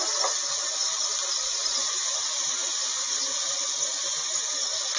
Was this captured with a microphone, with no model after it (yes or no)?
yes